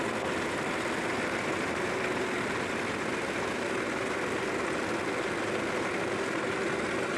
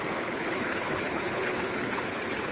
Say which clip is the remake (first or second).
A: second